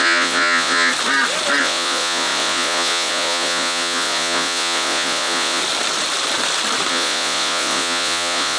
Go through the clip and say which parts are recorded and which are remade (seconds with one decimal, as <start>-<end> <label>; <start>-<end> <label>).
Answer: 0.0-0.9 remade; 0.9-1.6 recorded; 1.6-5.6 remade; 5.6-6.9 recorded; 6.9-8.6 remade